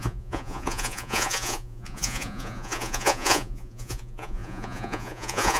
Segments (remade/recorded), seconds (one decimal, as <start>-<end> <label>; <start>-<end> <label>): 0.0-5.6 remade